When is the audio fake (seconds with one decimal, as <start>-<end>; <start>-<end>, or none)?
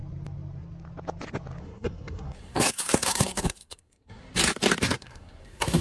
1.6-4.2; 4.8-5.8